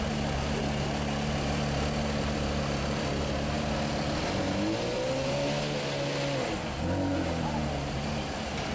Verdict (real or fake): real